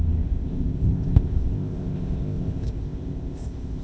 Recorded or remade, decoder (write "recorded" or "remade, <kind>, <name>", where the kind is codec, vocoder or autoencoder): remade, codec, ZipCodec